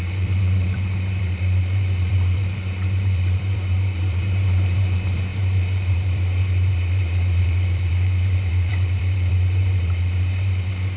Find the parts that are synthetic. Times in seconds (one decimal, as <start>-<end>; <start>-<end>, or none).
0.0-11.0